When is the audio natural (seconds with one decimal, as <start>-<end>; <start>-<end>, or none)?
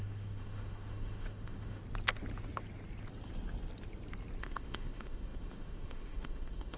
1.8-4.4